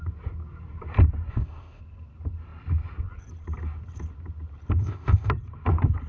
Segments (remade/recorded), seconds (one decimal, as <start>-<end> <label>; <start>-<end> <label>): 0.0-1.3 recorded; 1.3-1.8 remade; 1.8-4.8 recorded; 4.8-5.3 remade; 5.3-6.1 recorded